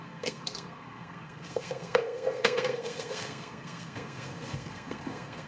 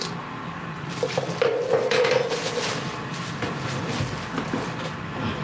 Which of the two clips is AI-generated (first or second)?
first